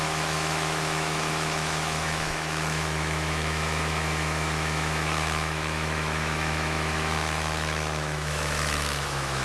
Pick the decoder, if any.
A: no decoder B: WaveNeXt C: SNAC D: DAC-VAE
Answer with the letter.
D